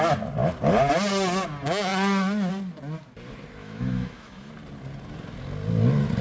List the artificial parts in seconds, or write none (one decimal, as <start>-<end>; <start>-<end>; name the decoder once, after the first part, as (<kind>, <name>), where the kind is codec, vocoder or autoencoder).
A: 3.6-4.5 (autoencoder, DAC-VAE)